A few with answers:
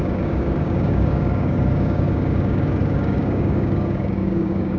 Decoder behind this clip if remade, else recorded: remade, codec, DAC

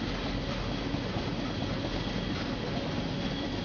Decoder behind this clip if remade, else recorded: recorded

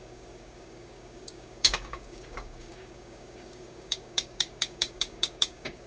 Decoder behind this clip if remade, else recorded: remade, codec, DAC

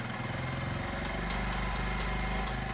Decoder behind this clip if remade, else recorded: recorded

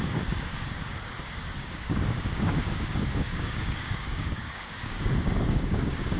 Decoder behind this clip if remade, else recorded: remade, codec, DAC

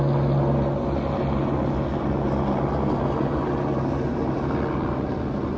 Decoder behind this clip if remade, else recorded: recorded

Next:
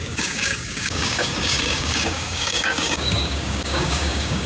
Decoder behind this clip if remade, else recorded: remade, codec, DAC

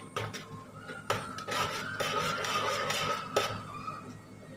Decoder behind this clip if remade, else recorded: recorded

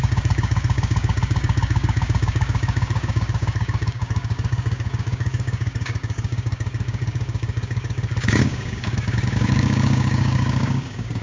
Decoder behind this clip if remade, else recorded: remade, codec, DAC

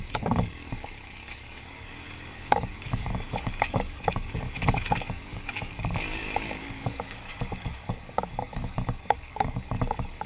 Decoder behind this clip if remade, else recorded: remade, codec, DAC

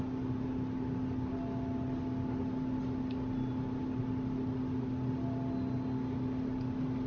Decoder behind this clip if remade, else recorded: recorded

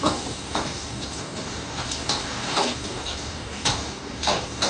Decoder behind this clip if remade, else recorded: remade, codec, DAC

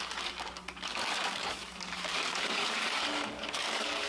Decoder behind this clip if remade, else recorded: remade, codec, DAC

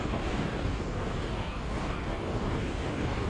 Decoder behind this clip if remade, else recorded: remade, codec, DAC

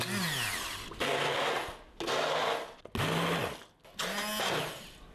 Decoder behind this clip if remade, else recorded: recorded